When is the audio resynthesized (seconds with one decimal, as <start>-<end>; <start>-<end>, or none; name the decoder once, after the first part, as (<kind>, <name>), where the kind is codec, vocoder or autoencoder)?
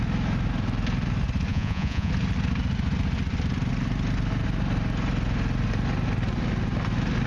1.5-2.1 (vocoder, Vocos)